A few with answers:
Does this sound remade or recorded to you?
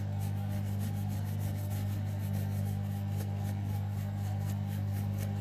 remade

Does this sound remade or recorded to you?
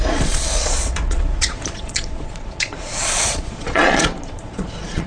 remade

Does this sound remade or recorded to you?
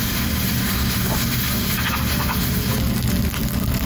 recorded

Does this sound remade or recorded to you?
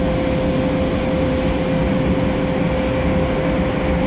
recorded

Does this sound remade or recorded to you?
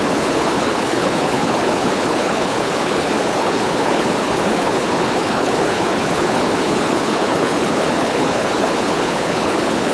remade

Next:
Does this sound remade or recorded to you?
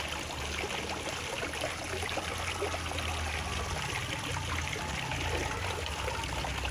recorded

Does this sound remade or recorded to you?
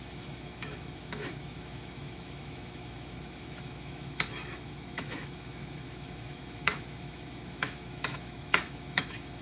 remade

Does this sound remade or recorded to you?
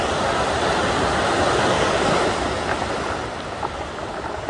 remade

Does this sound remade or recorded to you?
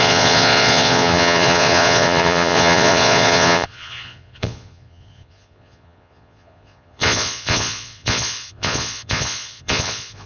remade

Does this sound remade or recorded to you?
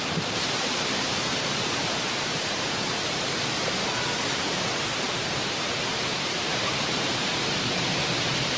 remade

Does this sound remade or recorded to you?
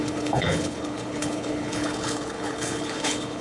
remade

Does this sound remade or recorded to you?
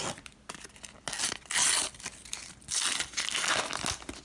recorded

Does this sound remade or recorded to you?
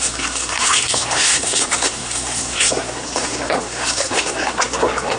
remade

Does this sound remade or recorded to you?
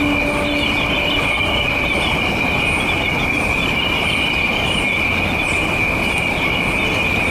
recorded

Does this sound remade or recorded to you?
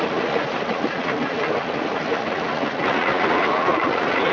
remade